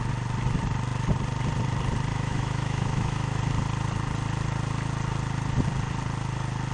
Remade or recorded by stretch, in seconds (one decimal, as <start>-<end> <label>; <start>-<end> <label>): 0.0-2.1 recorded; 2.1-3.4 remade; 3.4-6.7 recorded